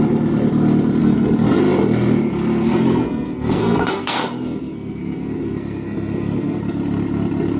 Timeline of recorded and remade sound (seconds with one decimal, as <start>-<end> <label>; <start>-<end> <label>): 0.0-1.0 recorded; 1.0-1.6 remade; 1.6-2.6 recorded; 2.6-6.6 remade; 6.6-7.6 recorded